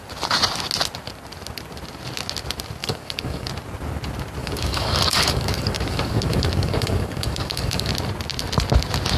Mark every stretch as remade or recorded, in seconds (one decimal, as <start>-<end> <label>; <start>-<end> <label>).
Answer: 0.0-2.8 recorded; 2.8-3.5 remade; 3.5-4.4 recorded; 4.4-7.9 remade; 7.9-9.2 recorded